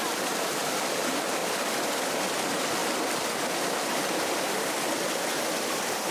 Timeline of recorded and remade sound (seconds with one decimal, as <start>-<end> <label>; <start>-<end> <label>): 0.0-1.4 recorded; 1.4-2.1 remade; 2.1-6.1 recorded